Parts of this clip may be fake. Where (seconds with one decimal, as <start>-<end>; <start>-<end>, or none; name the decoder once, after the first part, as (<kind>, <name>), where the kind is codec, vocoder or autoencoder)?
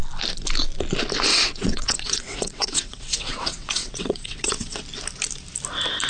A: 1.3-4.8 (vocoder, WaveNeXt)